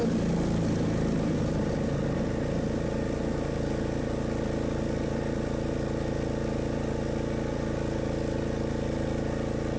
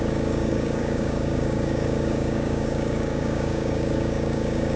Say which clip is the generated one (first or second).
second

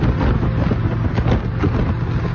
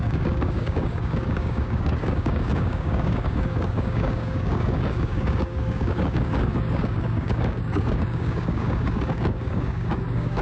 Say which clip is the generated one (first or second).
second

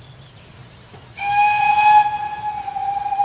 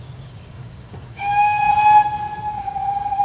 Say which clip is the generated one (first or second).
second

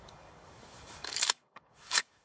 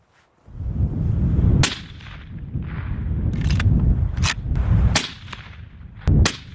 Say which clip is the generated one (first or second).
first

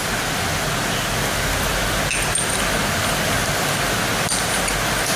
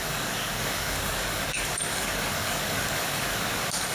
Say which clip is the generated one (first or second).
second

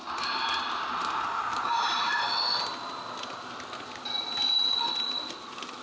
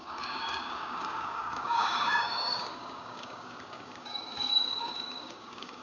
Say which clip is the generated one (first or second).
second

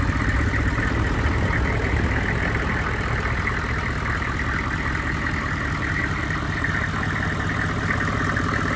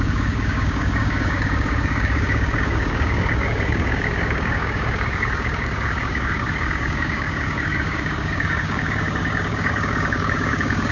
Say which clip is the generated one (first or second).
second